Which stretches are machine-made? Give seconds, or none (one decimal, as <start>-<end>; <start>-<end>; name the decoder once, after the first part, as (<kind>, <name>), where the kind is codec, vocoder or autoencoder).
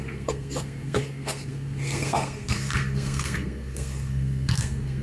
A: 0.0-5.0 (codec, SNAC)